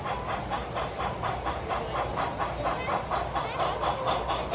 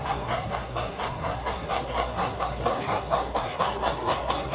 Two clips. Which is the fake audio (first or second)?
second